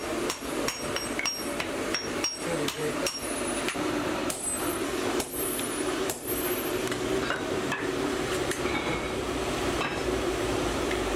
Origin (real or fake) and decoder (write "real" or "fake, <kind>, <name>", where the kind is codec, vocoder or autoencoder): fake, vocoder, BigVGAN v2